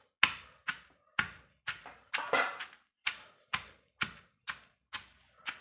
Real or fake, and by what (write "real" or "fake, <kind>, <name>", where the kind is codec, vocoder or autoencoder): real